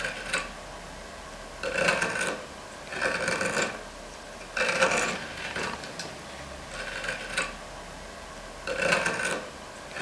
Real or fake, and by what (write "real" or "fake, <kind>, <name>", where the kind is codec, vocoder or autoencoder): real